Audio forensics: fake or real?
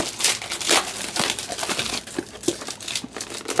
real